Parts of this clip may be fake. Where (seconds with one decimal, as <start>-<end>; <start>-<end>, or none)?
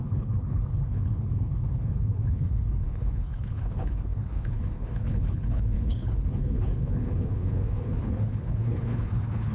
0.0-9.5